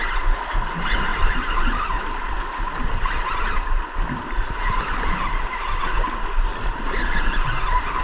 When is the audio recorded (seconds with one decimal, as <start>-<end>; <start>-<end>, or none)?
0.0-1.1; 5.8-6.5; 7.5-8.0